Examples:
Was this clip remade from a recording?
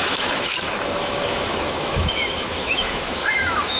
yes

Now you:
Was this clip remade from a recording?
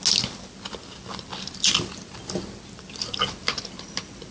no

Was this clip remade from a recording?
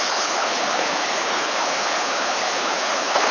yes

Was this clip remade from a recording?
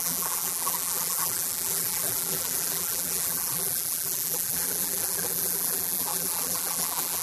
yes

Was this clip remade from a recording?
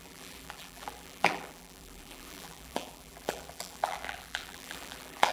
yes